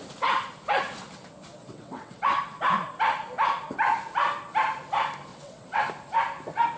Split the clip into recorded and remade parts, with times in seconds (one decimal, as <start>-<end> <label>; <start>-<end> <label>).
0.0-1.6 recorded; 1.6-2.3 remade; 2.3-5.3 recorded; 5.3-5.9 remade; 5.9-6.8 recorded